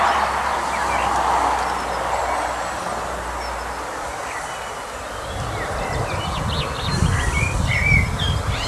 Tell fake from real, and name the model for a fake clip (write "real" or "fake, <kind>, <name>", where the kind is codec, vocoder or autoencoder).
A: real